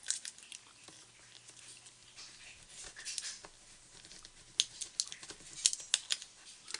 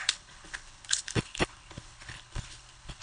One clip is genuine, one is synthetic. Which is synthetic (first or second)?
second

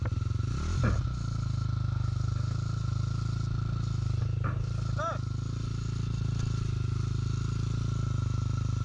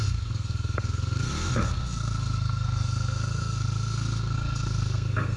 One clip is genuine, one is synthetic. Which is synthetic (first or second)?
second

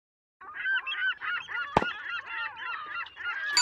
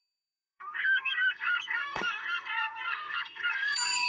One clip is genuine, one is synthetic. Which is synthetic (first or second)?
second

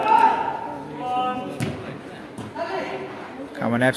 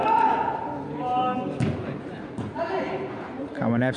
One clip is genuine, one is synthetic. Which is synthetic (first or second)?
second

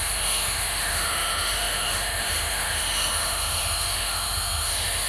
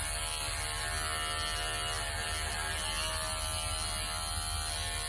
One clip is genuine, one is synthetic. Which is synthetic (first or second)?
first